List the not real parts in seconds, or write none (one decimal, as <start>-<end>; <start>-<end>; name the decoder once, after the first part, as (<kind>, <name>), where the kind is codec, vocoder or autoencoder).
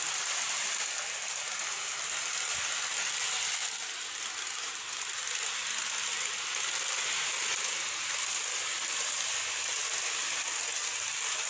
none